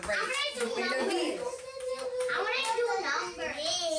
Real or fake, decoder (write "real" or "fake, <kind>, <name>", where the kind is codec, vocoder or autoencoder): real